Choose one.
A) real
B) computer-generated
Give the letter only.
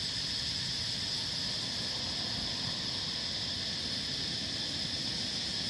A